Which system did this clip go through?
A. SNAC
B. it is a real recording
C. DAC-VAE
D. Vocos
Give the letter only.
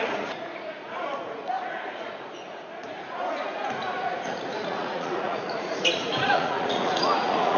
D